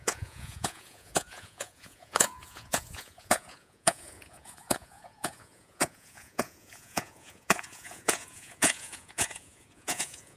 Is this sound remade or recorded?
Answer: remade